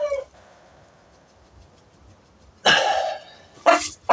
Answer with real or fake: real